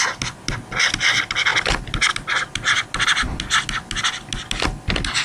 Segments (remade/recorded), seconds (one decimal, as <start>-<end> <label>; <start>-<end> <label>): 0.0-5.2 recorded